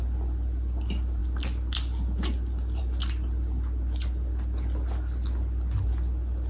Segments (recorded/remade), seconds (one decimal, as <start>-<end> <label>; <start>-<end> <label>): 0.0-6.5 recorded